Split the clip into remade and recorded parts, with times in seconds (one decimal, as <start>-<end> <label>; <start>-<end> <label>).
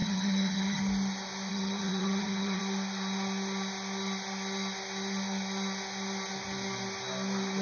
0.0-0.8 remade; 0.8-1.5 recorded; 1.5-2.6 remade; 2.6-7.6 recorded